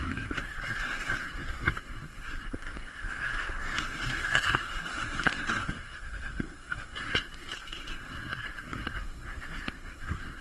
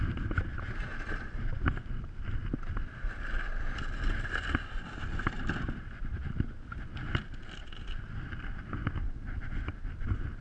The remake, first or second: first